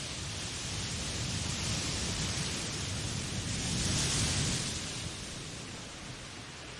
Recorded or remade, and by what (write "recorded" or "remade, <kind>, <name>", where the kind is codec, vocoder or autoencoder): recorded